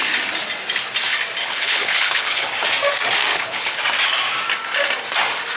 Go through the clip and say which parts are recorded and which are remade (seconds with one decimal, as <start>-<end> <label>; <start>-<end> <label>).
0.0-1.4 recorded; 1.4-2.5 remade; 2.5-3.3 recorded; 3.3-3.8 remade; 3.8-5.6 recorded